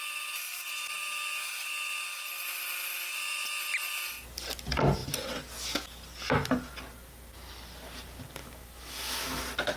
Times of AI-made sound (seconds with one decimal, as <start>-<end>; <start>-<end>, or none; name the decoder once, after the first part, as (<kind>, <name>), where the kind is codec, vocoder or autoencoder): 8.4-9.4 (autoencoder, DAC-VAE)